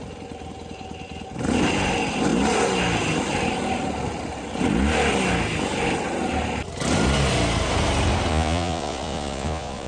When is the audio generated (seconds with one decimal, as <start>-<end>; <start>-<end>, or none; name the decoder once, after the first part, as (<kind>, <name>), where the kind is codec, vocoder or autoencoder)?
8.3-9.9 (vocoder, Vocos)